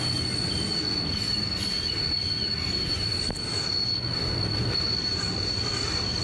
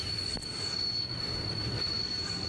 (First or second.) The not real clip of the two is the second